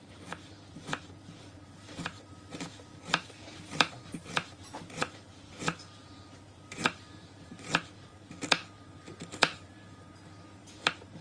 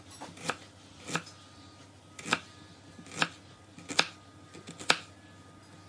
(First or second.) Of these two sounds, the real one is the second